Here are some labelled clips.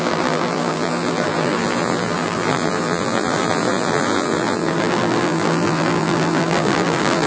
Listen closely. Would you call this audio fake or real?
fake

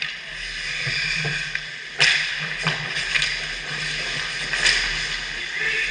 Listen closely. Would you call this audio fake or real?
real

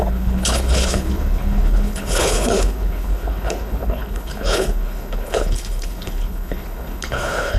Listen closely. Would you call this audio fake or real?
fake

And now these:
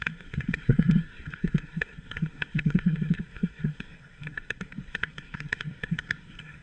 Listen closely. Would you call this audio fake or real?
fake